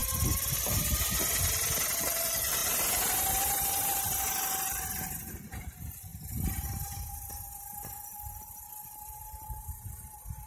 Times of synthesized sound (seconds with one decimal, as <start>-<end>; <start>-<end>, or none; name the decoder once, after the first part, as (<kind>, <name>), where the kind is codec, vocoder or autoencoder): 2.0-2.6 (vocoder, BigVGAN v2); 4.9-10.5